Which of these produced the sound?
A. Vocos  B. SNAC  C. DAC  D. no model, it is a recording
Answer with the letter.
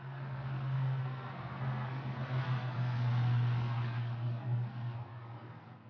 B